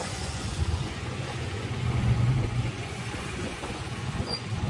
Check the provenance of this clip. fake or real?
fake